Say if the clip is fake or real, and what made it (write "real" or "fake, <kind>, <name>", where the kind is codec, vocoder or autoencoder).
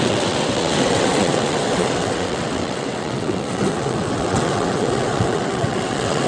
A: fake, vocoder, WaveNeXt